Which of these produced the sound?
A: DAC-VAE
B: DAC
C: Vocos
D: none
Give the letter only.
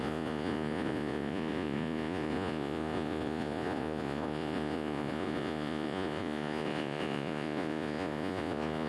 C